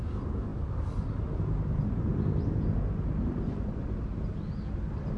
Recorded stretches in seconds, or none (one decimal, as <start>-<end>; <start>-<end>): 0.0-5.2